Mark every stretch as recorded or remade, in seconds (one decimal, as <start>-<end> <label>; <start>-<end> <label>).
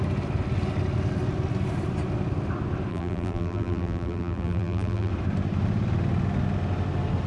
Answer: 0.0-2.9 recorded; 2.9-5.1 remade; 5.1-7.3 recorded